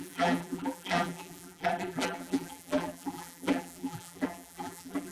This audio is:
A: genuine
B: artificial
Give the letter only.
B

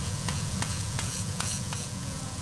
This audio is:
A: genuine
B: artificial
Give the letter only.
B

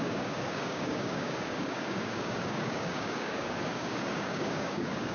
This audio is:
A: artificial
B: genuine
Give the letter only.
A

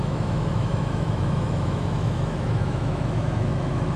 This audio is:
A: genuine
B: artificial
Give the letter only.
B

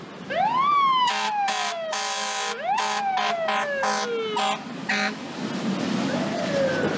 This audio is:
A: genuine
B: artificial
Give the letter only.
A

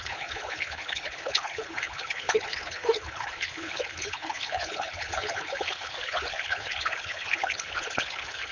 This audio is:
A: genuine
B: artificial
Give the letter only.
B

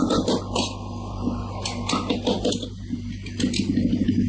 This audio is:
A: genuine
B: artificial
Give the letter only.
A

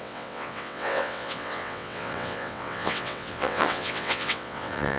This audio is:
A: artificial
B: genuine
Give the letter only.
A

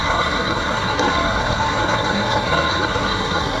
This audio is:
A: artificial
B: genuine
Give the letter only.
A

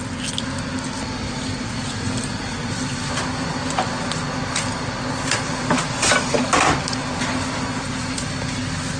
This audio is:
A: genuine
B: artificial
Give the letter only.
A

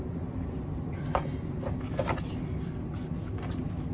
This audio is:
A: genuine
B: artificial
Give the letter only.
A